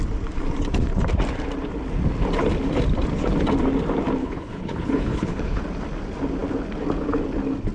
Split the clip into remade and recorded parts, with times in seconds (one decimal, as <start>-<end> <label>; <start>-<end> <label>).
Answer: 0.0-4.2 recorded; 4.2-5.6 remade; 5.6-7.7 recorded